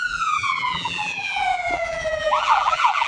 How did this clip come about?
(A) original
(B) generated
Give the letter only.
B